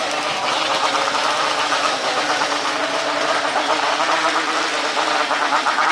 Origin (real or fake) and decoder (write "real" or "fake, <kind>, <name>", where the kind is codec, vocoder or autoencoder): real